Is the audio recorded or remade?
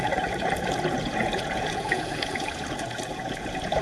remade